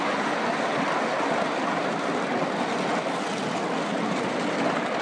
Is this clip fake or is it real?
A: real